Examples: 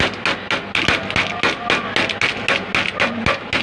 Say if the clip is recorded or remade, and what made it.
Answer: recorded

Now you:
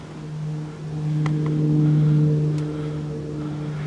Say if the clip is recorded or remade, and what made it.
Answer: recorded